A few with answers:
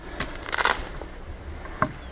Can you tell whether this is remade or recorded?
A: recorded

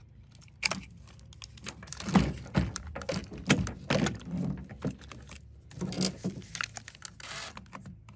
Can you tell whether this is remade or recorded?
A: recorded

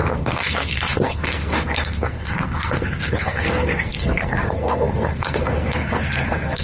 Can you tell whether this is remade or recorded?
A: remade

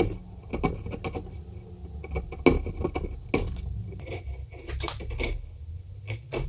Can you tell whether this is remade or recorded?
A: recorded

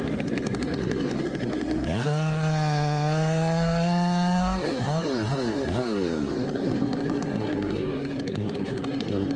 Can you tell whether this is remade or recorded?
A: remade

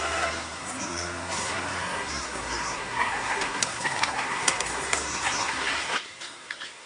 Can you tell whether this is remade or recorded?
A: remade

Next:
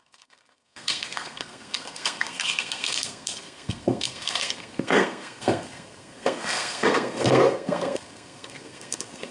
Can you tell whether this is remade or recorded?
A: remade